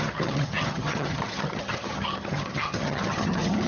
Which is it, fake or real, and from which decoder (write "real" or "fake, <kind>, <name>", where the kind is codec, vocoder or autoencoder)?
fake, vocoder, HiFi-GAN